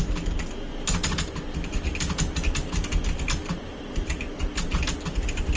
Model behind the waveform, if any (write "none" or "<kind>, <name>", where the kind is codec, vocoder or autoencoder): none